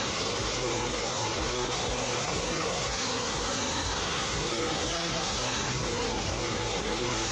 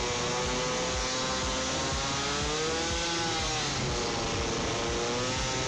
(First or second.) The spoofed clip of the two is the first